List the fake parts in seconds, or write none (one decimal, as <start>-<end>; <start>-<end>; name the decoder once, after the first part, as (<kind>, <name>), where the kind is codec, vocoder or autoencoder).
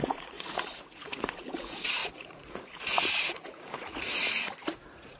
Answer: 0.0-5.2 (vocoder, Vocos)